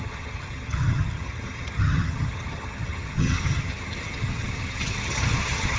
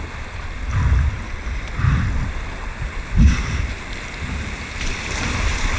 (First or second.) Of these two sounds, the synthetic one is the first